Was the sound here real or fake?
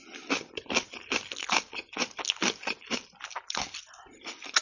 real